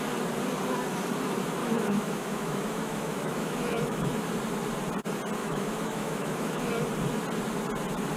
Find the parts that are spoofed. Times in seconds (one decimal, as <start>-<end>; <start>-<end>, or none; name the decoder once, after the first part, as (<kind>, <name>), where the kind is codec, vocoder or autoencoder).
1.6-4.3 (autoencoder, DAC-VAE); 5.4-6.7